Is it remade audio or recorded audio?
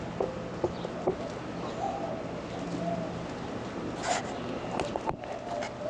recorded